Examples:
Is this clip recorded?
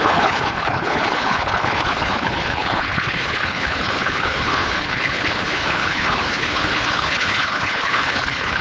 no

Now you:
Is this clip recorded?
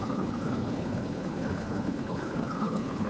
no